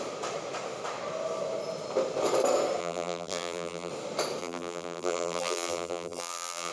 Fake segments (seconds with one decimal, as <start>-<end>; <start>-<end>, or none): 2.8-3.9; 4.4-6.7